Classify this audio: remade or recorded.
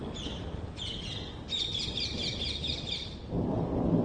recorded